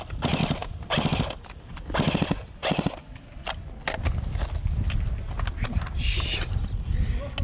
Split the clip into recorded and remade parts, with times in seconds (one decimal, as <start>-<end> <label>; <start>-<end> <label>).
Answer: 0.0-7.4 recorded

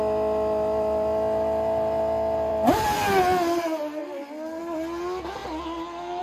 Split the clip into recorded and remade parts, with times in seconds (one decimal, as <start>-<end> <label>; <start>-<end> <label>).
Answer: 0.0-2.5 recorded; 2.5-3.2 remade; 3.2-6.2 recorded